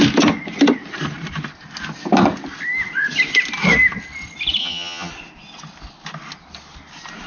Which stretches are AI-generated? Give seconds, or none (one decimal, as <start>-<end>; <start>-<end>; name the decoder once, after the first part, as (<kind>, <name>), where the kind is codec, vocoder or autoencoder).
4.6-5.1 (vocoder, HiFi-GAN)